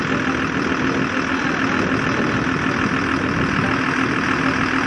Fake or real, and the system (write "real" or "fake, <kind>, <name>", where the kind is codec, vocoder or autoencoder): real